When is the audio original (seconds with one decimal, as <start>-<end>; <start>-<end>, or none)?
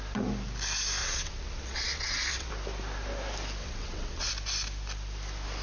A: 0.0-1.0; 2.5-3.6; 4.3-5.6